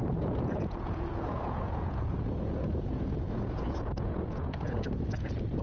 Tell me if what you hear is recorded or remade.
remade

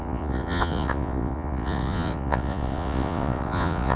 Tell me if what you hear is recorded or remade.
remade